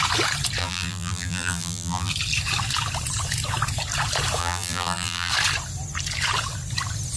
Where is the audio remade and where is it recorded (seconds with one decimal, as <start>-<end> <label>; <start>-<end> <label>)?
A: 0.0-0.6 recorded; 0.6-2.1 remade; 2.1-4.4 recorded; 4.4-5.3 remade; 5.3-7.2 recorded